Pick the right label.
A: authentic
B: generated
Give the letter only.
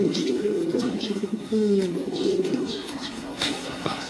B